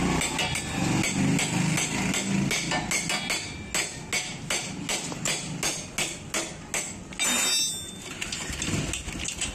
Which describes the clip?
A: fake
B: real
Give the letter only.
B